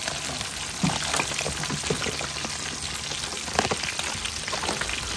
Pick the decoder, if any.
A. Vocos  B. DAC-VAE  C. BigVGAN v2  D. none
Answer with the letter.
D